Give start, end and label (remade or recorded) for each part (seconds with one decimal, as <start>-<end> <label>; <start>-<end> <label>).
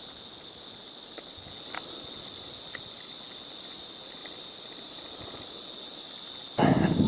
0.0-7.1 recorded